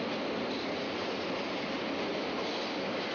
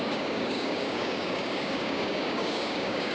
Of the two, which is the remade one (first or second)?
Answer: second